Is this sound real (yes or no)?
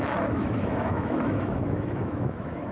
no